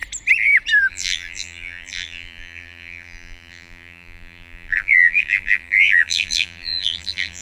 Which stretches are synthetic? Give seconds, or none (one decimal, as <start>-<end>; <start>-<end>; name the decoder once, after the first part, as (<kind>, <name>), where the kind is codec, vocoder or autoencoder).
0.9-7.4 (vocoder, BigVGAN v2)